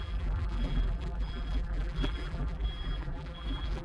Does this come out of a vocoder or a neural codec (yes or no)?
yes